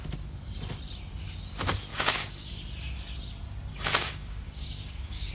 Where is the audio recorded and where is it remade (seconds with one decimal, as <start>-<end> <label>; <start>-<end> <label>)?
0.0-1.9 recorded; 1.9-2.5 remade; 2.5-3.7 recorded; 3.7-5.3 remade